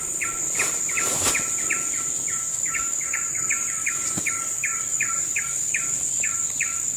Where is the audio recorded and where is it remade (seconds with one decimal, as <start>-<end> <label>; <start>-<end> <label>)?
0.0-2.5 recorded; 2.5-7.0 remade